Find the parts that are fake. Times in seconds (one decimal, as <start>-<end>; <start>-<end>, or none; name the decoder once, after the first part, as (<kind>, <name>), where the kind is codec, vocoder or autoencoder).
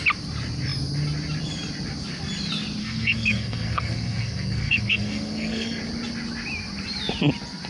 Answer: 2.8-5.8 (codec, SNAC)